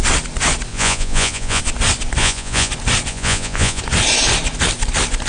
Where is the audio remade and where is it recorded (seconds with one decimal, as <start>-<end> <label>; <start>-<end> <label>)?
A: 0.0-0.7 recorded; 0.7-1.6 remade; 1.6-2.2 recorded; 2.2-2.7 remade; 2.7-3.1 recorded; 3.1-3.8 remade; 3.8-5.3 recorded